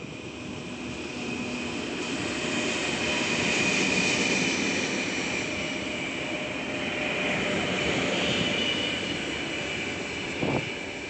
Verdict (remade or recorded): recorded